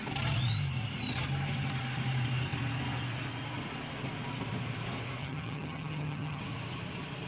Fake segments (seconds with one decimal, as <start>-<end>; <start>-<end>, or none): 5.2-6.4